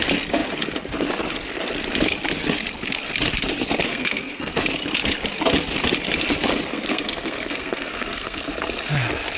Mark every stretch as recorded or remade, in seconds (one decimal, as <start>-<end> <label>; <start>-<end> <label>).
0.0-3.9 recorded; 3.9-4.6 remade; 4.6-6.7 recorded; 6.7-8.4 remade; 8.4-9.4 recorded